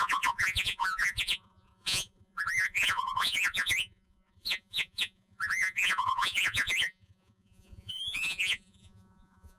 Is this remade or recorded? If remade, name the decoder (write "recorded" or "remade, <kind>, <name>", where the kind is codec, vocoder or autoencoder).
remade, vocoder, Vocos